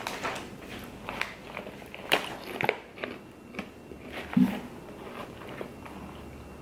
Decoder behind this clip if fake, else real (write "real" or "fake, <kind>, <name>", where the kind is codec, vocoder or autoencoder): real